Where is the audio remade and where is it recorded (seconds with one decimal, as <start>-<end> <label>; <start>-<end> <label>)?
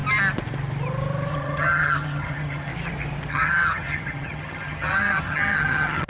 0.0-1.3 recorded; 1.3-2.7 remade; 2.7-3.3 recorded; 3.3-6.1 remade